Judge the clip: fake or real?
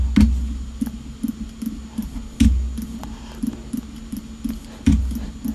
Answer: real